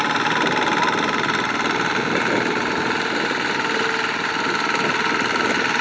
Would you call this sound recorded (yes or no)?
yes